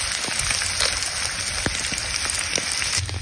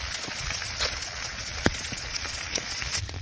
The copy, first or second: second